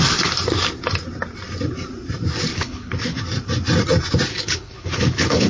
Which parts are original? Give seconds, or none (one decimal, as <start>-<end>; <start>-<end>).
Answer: 0.0-2.5; 3.2-4.3